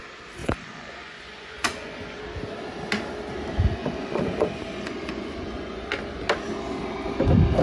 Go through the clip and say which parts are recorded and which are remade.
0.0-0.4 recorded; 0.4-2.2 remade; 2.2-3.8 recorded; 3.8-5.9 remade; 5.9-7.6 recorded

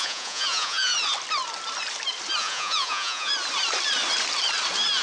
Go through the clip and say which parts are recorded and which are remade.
0.0-0.9 remade; 0.9-2.4 recorded; 2.4-3.3 remade; 3.3-5.0 recorded

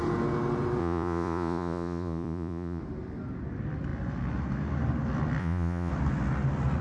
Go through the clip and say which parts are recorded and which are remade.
0.0-0.8 recorded; 0.8-2.8 remade; 2.8-5.4 recorded; 5.4-5.9 remade; 5.9-6.8 recorded

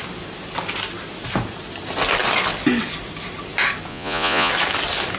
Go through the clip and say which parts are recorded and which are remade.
0.0-3.9 recorded; 3.9-4.5 remade; 4.5-5.2 recorded

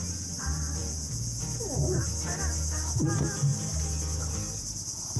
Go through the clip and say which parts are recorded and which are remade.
0.0-0.8 recorded; 0.8-1.4 remade; 1.4-5.2 recorded